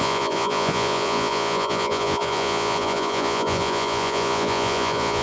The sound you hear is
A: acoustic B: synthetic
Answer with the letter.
B